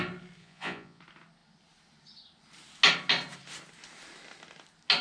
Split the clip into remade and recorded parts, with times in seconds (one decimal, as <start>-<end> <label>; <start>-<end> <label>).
0.0-0.4 recorded; 0.4-1.0 remade; 1.0-5.0 recorded